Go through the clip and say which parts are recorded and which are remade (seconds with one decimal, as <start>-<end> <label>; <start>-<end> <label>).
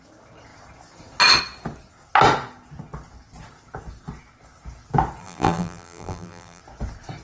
0.0-5.2 recorded; 5.2-6.6 remade; 6.6-7.2 recorded